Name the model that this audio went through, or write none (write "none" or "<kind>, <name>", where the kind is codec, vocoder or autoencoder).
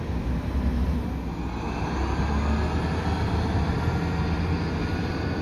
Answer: none